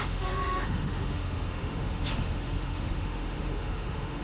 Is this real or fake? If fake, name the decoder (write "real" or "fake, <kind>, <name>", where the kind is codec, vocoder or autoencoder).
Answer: fake, autoencoder, DAC-VAE